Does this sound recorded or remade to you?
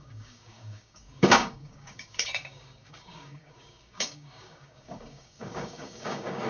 remade